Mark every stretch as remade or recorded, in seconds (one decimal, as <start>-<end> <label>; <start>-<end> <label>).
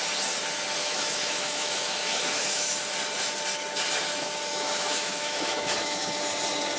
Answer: 0.0-0.8 recorded; 0.8-2.7 remade; 2.7-4.5 recorded; 4.5-6.2 remade; 6.2-6.8 recorded